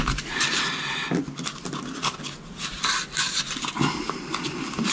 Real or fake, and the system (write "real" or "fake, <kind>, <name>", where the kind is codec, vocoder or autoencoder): real